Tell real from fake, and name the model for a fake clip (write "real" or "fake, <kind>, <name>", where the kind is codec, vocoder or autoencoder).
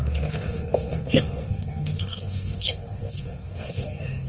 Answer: fake, codec, SNAC